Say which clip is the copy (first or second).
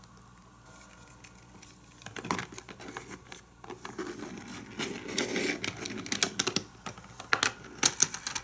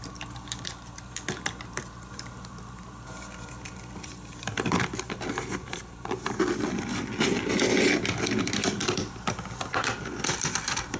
second